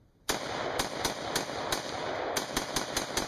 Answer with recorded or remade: recorded